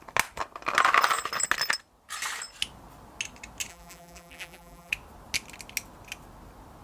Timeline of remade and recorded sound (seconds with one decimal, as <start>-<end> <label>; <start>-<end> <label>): 0.0-3.7 recorded; 3.7-4.9 remade; 4.9-6.8 recorded